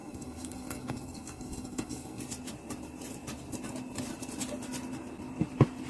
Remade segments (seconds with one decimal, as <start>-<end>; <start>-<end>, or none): 0.0-2.2